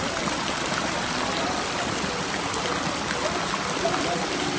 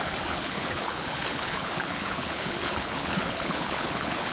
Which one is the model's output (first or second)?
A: second